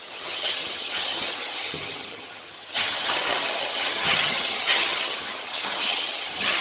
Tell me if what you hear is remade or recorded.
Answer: remade